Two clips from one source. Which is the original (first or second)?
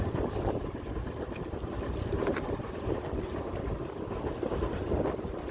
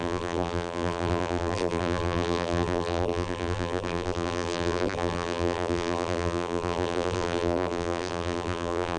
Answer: first